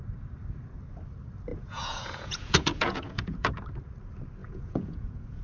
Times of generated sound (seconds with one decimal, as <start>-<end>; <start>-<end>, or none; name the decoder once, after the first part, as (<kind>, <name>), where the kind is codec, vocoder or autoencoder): 1.5-3.5 (vocoder, Vocos); 4.4-5.4